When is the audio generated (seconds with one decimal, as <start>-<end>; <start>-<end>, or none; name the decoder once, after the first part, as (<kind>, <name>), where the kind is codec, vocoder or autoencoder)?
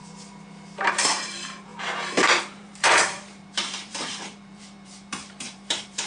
0.9-6.1 (vocoder, BigVGAN v2)